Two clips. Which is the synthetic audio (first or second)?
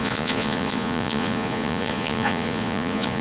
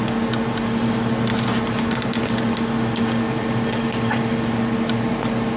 first